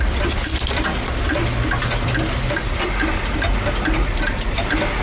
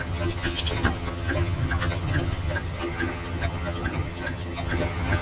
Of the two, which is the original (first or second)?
first